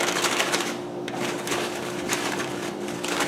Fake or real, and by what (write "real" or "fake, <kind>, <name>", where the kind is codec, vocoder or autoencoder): fake, codec, DAC